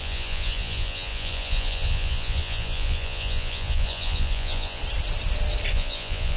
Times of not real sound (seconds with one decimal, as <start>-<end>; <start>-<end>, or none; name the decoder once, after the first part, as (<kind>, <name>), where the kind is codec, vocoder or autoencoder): 0.0-4.8 (vocoder, Vocos); 5.7-6.4